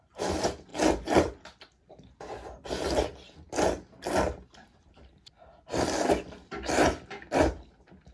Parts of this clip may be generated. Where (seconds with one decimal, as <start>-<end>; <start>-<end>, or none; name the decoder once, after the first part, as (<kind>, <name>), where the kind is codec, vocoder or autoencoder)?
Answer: none